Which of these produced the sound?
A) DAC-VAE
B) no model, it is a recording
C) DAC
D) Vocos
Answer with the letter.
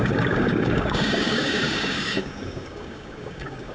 C